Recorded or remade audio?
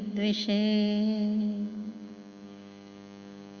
remade